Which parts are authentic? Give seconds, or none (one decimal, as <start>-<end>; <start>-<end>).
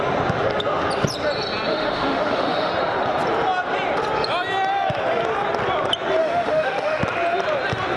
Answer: 0.0-1.7; 2.7-6.2; 7.0-8.0